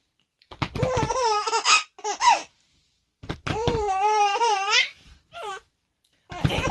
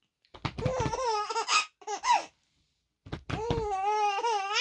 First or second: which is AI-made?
first